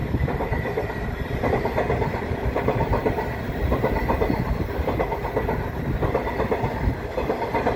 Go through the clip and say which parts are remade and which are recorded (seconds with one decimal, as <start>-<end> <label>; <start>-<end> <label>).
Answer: 0.0-3.0 remade; 3.0-7.8 recorded